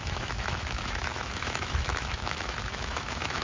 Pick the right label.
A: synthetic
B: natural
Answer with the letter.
A